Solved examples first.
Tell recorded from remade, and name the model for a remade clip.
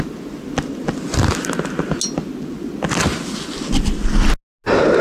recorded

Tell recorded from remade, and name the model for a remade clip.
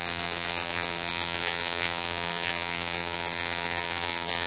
remade, vocoder, BigVGAN v2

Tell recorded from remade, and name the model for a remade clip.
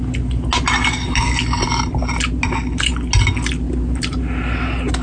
recorded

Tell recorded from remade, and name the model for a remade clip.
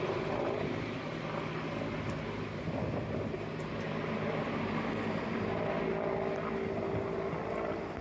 recorded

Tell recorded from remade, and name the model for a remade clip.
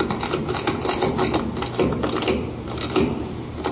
recorded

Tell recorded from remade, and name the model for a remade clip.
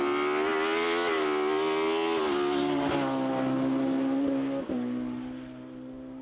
recorded